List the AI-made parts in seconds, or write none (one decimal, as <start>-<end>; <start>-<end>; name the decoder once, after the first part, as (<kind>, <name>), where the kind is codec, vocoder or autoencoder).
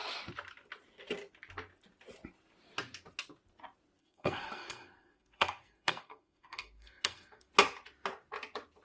4.0-7.5 (codec, SNAC)